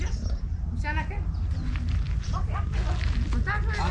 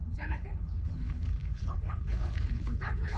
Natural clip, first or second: first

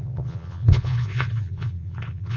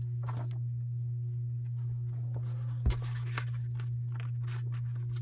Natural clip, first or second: second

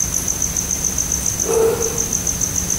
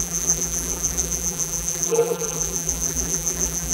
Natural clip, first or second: first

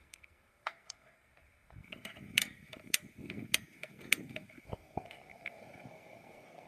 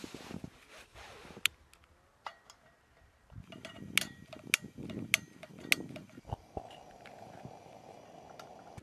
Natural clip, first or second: second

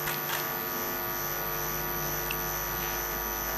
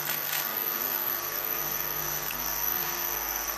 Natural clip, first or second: first